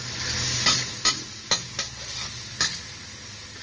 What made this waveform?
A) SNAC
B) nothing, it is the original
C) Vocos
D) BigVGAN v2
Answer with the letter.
B